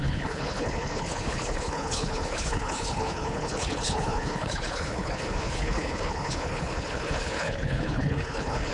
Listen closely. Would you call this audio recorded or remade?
remade